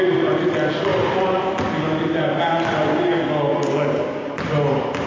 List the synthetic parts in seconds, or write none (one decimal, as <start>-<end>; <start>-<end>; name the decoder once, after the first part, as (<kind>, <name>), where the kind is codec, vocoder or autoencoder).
2.9-4.3 (codec, DAC)